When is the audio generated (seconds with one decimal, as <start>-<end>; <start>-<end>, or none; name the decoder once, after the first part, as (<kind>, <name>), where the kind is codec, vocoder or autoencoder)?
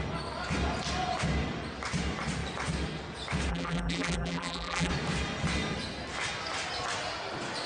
3.5-4.9 (vocoder, BigVGAN v2)